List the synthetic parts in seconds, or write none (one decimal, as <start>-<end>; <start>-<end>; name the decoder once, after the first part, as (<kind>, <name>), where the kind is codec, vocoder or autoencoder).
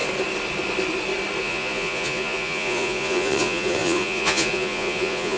1.4-5.4 (vocoder, Vocos)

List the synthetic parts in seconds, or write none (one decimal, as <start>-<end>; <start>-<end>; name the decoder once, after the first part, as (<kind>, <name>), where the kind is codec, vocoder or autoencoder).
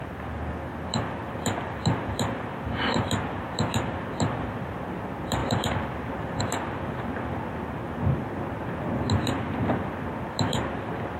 none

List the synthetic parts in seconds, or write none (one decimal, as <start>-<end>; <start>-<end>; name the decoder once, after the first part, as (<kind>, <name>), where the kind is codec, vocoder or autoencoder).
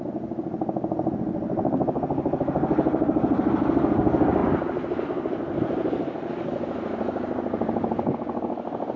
none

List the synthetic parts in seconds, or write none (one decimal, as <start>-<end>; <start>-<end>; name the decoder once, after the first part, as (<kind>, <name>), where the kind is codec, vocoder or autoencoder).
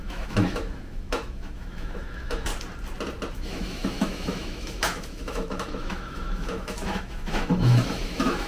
0.0-2.5 (autoencoder, DAC-VAE); 3.3-8.5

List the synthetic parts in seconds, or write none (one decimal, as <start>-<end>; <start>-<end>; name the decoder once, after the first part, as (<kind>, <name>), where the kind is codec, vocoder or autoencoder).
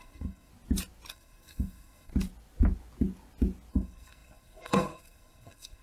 0.0-0.5 (codec, SNAC); 1.1-2.1; 3.7-5.8